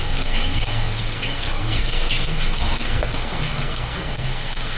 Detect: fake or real fake